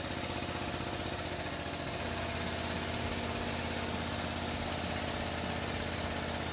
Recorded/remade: recorded